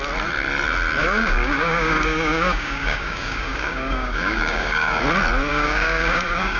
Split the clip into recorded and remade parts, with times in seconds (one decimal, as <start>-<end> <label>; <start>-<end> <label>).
0.0-1.0 recorded; 1.0-5.0 remade; 5.0-5.5 recorded; 5.5-6.6 remade